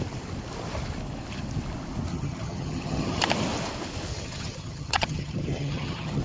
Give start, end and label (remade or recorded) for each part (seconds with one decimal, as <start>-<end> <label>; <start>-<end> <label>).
0.0-2.1 recorded; 2.1-3.2 remade; 3.2-4.1 recorded; 4.1-6.2 remade